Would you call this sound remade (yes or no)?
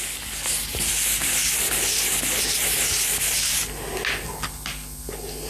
no